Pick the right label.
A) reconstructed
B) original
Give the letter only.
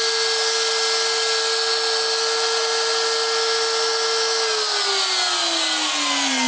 B